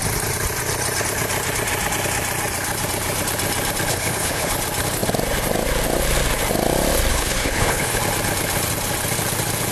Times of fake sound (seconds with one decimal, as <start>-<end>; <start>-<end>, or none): 3.9-4.5; 7.1-8.0